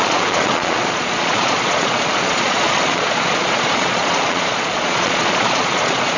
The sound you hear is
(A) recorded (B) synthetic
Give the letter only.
B